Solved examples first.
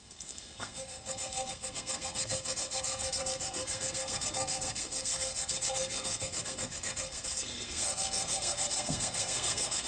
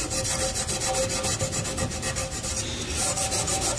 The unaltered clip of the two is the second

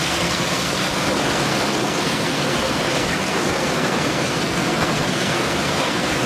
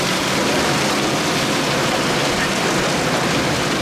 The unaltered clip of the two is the second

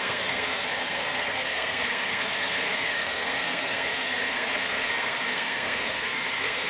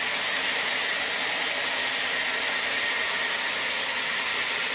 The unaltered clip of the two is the second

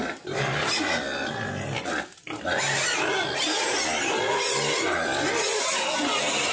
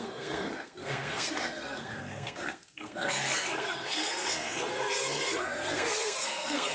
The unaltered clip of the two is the first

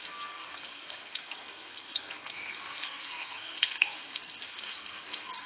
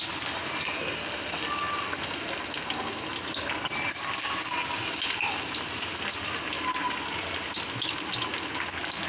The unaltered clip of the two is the second